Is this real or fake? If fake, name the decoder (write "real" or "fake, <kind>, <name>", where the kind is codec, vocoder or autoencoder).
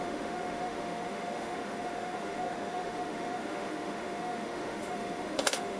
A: fake, autoencoder, DAC-VAE